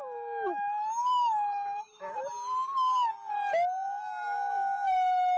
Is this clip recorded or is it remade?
recorded